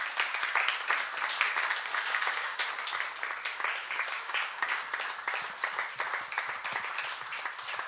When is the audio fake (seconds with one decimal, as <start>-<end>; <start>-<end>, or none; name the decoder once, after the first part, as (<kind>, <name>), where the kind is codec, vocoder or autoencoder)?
1.9-2.6 (codec, DAC); 3.8-4.9